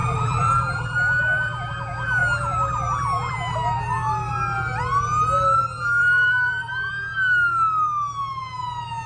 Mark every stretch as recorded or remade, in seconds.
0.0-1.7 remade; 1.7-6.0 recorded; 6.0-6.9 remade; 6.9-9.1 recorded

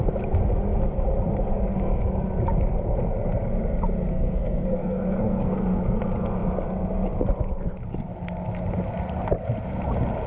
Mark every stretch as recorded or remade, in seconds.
0.0-4.1 recorded; 4.1-6.0 remade; 6.0-10.3 recorded

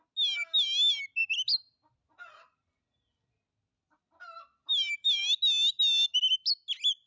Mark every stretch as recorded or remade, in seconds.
0.0-7.1 recorded

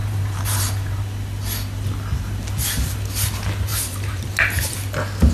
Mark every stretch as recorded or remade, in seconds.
0.0-1.0 remade; 1.0-3.7 recorded; 3.7-4.2 remade; 4.2-5.3 recorded